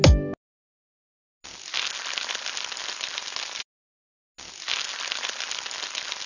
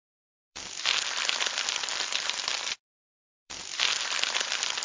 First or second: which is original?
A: first